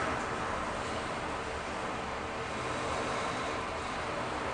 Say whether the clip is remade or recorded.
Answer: recorded